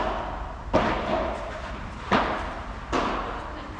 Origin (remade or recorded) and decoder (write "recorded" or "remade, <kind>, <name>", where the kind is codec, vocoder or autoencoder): recorded